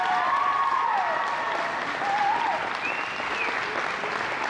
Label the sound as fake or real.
real